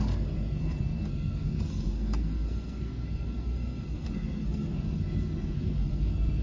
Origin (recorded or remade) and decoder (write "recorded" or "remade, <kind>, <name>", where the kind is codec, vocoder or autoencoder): remade, codec, SNAC